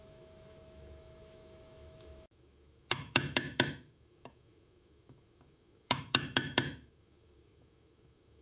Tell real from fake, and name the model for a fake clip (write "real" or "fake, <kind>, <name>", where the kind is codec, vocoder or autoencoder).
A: fake, autoencoder, DAC-VAE